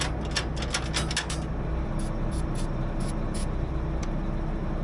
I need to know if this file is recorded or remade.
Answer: recorded